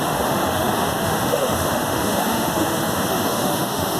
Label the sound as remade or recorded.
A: remade